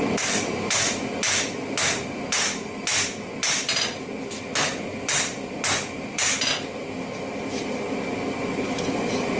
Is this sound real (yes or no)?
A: yes